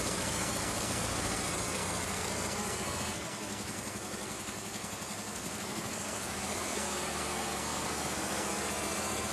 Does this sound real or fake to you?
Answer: fake